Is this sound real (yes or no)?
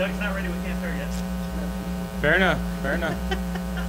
no